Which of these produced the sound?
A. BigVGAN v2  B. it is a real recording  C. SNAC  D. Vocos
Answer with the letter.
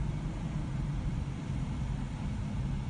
B